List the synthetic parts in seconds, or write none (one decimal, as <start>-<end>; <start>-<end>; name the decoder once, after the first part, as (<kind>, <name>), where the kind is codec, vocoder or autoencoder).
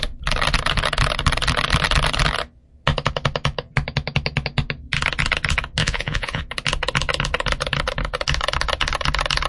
5.8-6.4 (vocoder, Vocos)